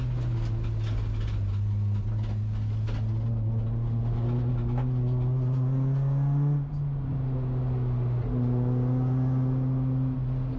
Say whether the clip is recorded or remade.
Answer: recorded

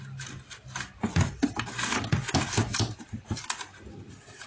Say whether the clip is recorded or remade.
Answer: recorded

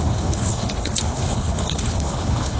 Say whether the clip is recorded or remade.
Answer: remade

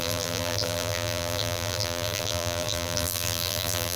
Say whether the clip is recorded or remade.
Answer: remade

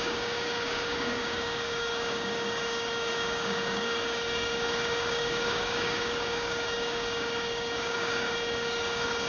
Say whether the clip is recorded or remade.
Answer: remade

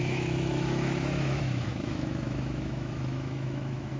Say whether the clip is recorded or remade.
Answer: remade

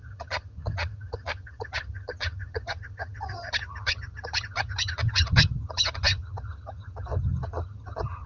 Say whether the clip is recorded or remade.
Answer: remade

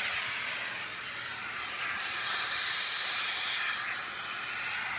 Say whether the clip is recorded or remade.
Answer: recorded